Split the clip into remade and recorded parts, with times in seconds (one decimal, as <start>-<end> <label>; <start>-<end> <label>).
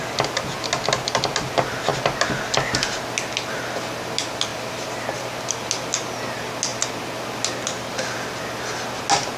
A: 0.0-9.4 recorded